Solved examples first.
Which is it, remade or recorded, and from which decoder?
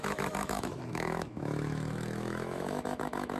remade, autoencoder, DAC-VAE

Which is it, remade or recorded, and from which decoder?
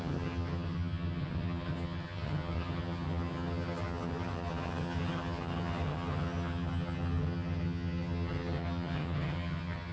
remade, vocoder, HiFi-GAN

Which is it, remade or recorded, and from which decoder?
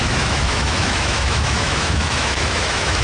remade, autoencoder, DAC-VAE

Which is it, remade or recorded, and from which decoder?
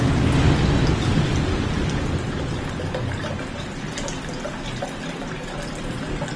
recorded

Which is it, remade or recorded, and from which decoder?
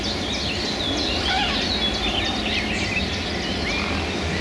recorded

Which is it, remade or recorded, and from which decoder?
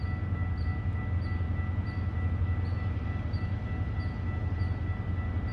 recorded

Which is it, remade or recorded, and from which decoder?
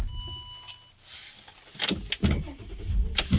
recorded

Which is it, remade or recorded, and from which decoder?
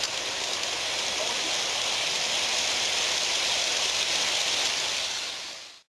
recorded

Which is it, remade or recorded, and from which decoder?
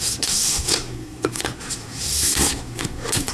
remade, codec, SNAC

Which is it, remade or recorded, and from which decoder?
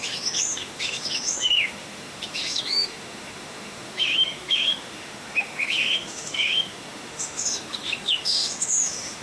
remade, autoencoder, DAC-VAE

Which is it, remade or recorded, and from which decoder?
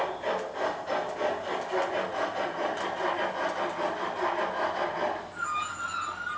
recorded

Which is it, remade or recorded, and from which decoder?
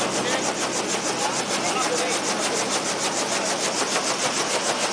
recorded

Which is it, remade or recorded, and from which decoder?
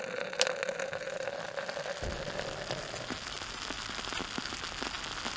recorded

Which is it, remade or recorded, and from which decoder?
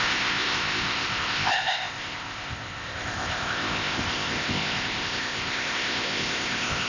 remade, codec, ZipCodec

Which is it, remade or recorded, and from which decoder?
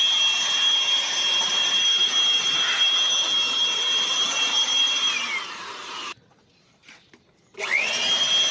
remade, vocoder, BigVGAN v2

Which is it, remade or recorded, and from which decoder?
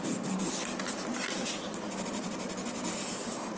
recorded